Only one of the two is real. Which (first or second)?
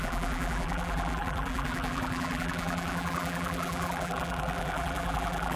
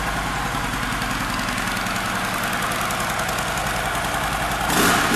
second